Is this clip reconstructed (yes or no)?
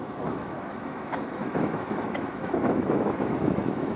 yes